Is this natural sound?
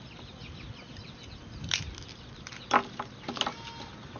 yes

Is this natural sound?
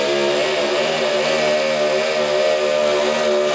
yes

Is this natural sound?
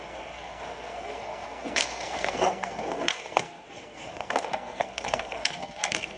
no